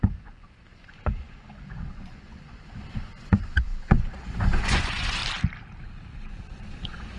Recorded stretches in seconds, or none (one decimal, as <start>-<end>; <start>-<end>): 5.2-6.2